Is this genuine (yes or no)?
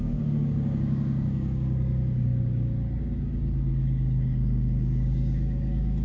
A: no